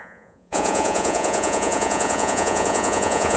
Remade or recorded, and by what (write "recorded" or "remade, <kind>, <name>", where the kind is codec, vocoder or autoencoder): remade, vocoder, Vocos